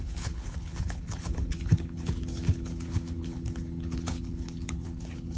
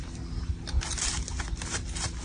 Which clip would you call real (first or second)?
second